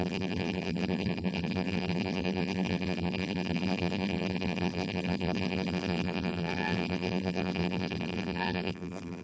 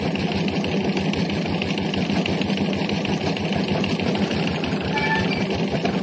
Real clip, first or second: second